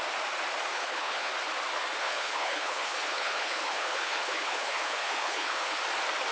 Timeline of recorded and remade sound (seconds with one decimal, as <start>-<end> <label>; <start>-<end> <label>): 0.0-0.7 recorded; 0.7-1.3 remade; 1.3-2.0 recorded; 2.0-5.8 remade; 5.8-6.3 recorded